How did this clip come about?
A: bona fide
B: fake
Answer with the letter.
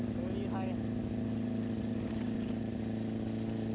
A